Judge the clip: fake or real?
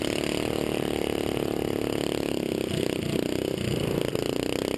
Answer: real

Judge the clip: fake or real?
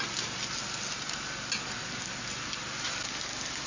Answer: real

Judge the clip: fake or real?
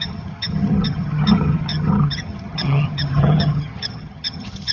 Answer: fake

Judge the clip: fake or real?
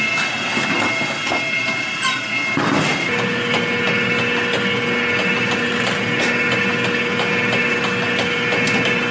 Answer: real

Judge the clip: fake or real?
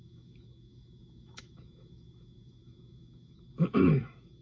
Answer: fake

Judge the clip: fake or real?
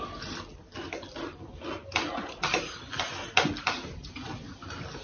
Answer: real